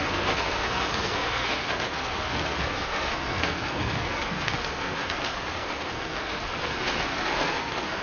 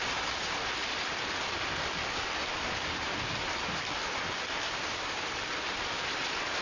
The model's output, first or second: first